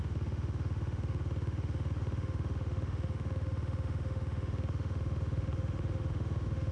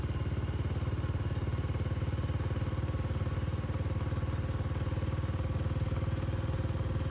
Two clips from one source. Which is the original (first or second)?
second